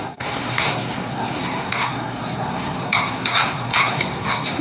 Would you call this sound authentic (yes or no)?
no